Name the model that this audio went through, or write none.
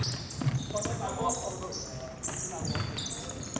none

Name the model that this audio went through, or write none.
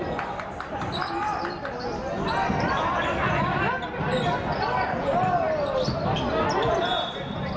none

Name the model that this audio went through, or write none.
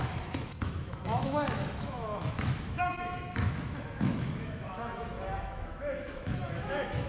autoencoder, DAC-VAE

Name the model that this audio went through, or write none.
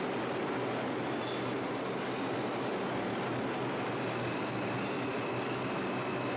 none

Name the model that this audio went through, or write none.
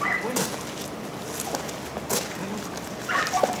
none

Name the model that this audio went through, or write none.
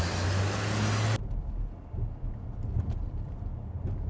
none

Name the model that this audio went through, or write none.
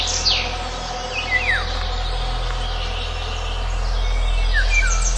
none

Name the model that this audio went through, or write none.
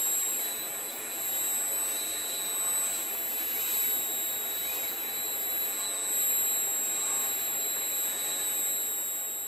none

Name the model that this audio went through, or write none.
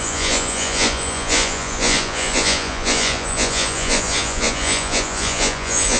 vocoder, Vocos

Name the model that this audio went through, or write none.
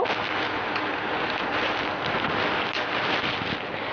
none